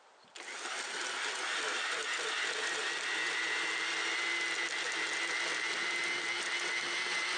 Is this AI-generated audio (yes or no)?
no